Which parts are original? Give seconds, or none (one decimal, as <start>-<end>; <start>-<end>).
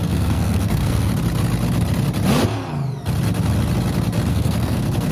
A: 1.1-4.3